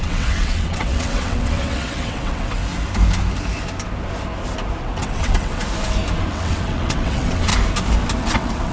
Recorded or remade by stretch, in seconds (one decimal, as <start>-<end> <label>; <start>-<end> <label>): 0.0-2.6 remade; 2.6-4.8 recorded; 4.8-5.6 remade; 5.6-6.3 recorded; 6.3-7.5 remade; 7.5-8.2 recorded; 8.2-8.7 remade